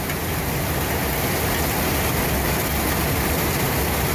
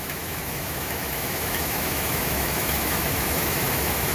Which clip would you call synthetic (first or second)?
second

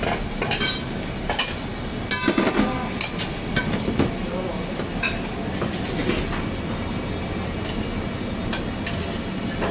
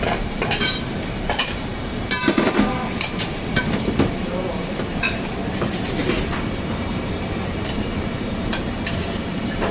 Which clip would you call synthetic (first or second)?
second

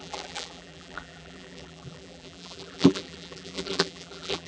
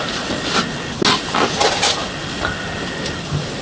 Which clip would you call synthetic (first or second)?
first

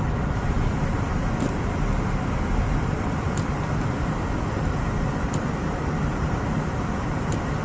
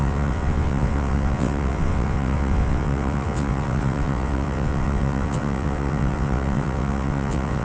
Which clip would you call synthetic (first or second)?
second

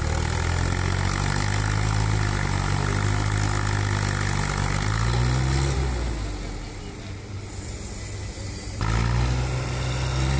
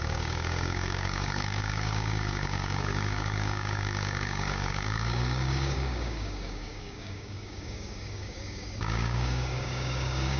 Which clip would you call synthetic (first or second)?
second